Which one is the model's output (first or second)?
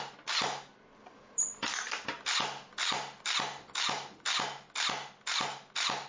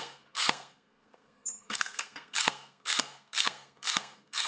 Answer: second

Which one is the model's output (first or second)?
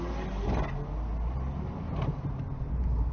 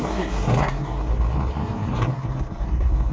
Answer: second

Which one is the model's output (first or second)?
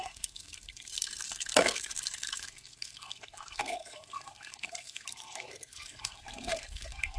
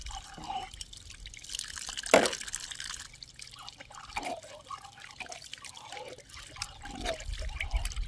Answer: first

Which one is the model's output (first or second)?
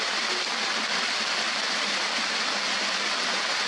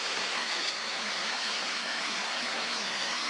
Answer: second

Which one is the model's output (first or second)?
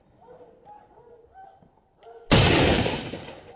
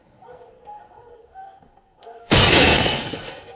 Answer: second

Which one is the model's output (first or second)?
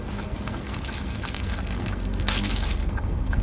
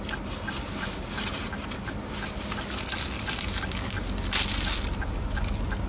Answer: first